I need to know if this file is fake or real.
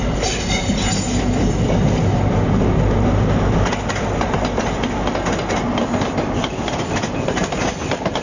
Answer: real